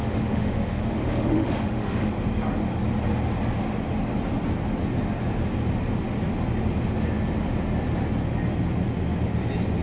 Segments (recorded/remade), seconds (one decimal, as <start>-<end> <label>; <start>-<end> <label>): 0.0-2.1 remade; 2.1-9.8 recorded